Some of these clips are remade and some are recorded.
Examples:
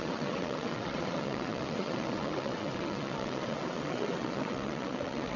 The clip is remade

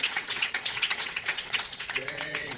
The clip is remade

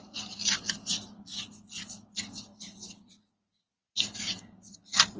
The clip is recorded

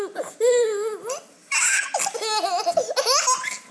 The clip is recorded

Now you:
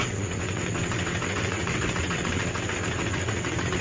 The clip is remade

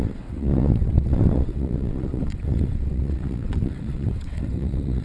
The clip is remade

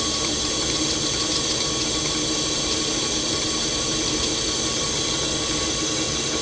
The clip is recorded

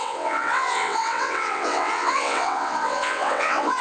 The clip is remade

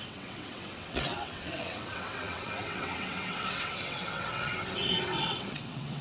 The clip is remade